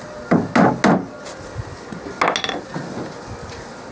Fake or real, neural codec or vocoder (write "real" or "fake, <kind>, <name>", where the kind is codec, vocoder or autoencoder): real